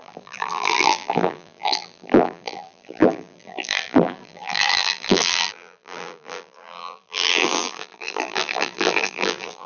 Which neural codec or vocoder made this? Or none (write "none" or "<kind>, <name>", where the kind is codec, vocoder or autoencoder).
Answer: vocoder, BigVGAN v2